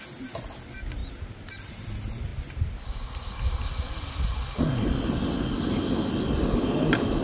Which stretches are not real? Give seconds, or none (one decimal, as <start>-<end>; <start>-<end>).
1.0-1.6